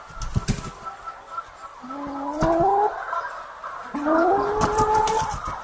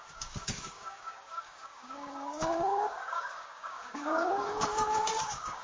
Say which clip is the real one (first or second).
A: first